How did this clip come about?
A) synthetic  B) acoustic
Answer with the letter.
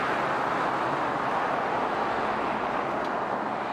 B